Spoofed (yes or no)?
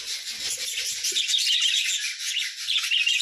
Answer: no